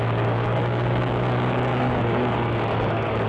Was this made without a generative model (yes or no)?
no